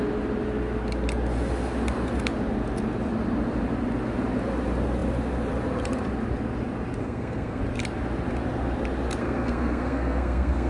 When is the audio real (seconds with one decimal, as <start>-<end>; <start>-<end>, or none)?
0.0-7.0; 7.6-9.2